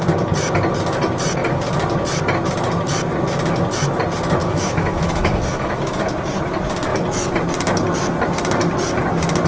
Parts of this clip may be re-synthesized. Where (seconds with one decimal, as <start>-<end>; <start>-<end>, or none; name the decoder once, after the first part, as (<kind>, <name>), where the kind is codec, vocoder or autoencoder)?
4.4-6.0 (autoencoder, DAC-VAE)